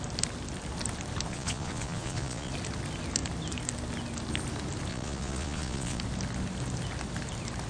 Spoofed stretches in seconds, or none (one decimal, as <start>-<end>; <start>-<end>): 1.3-2.5; 4.9-6.0